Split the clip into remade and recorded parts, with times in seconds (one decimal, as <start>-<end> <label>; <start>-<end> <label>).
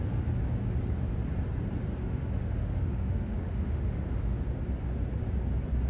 0.0-2.0 recorded; 2.0-4.4 remade; 4.4-5.9 recorded